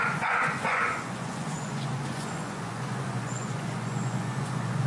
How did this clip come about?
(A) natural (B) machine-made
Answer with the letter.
B